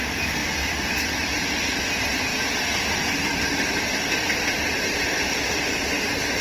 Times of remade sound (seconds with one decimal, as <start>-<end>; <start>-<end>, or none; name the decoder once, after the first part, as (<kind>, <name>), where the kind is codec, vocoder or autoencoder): none